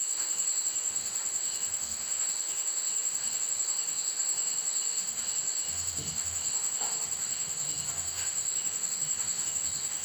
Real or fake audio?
fake